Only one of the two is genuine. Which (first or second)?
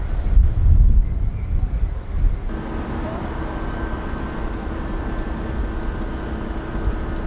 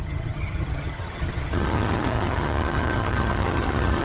first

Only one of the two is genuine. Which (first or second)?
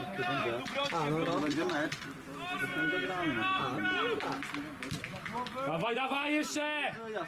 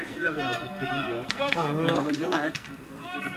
first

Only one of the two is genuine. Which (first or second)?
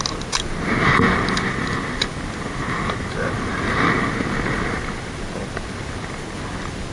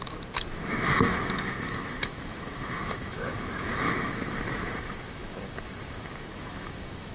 first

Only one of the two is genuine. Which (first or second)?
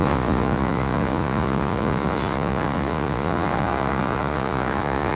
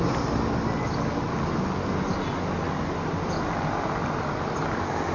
second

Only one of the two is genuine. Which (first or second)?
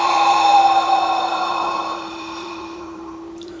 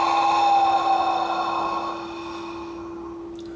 second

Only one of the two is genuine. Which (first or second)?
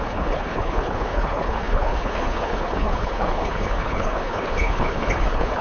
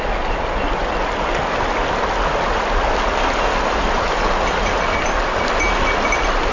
second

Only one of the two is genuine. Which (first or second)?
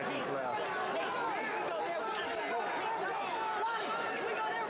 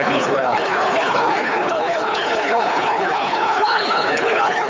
first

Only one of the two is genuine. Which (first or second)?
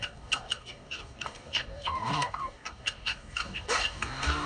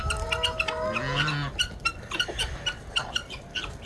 second